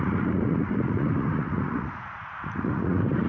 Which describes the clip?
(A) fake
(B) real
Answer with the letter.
A